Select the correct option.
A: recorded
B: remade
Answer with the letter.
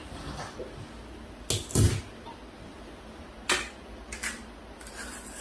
A